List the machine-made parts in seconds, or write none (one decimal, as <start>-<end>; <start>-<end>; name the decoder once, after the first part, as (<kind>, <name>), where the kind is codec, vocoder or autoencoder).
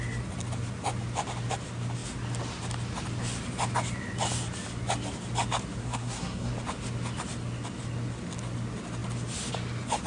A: 5.8-6.5 (codec, SNAC)